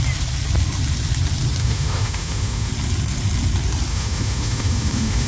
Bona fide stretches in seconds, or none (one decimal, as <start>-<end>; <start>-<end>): 0.0-1.6; 2.7-3.9